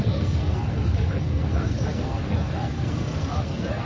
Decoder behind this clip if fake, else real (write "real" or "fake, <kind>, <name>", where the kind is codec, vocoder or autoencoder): fake, codec, SNAC